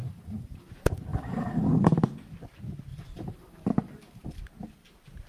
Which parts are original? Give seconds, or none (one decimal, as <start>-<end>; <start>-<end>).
0.7-1.1; 2.0-2.9; 4.4-5.3